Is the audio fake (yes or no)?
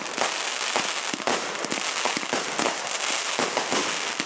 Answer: no